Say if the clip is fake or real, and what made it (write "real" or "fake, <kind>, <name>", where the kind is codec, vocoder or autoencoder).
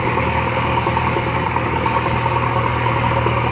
fake, codec, DAC